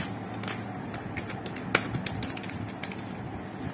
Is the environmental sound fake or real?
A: real